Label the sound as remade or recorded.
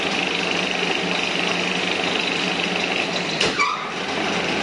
recorded